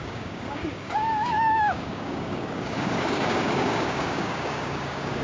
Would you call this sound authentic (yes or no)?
no